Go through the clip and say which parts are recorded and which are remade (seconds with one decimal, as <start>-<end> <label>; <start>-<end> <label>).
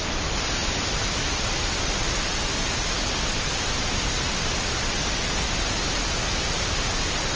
0.0-7.4 recorded